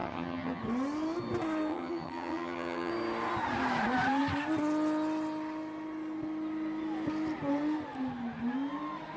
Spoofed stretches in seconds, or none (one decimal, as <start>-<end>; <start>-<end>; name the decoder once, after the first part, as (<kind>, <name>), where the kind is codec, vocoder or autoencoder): 0.0-0.6 (vocoder, HiFi-GAN); 1.7-2.9